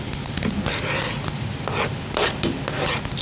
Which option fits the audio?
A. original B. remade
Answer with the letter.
A